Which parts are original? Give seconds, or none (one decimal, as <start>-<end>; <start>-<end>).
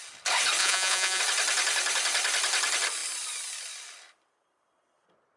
0.0-0.6; 1.2-5.4